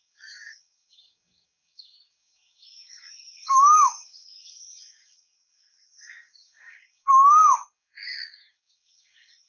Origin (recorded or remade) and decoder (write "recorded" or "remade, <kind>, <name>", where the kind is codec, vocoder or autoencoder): remade, codec, DAC